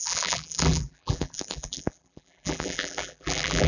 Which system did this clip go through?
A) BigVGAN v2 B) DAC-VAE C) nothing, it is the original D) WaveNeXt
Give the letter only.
A